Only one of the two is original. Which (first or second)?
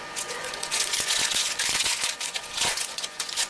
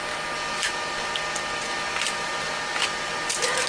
second